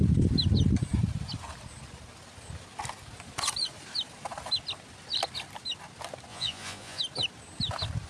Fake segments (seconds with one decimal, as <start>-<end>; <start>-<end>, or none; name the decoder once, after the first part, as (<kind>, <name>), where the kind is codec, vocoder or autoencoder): 6.3-7.0 (vocoder, Vocos)